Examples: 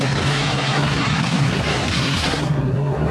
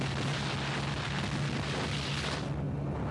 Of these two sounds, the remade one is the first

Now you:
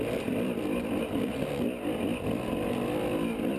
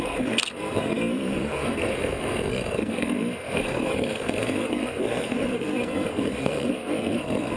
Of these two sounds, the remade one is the second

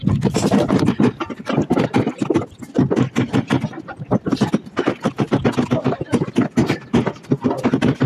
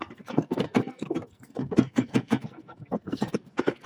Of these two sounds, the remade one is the second